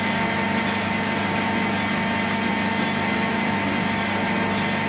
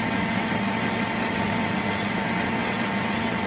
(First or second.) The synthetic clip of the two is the second